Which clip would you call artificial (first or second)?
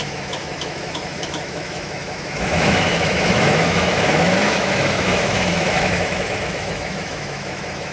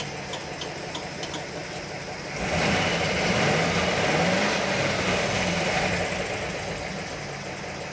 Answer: first